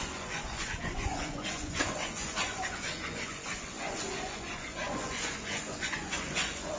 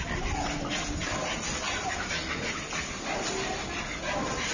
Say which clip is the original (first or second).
second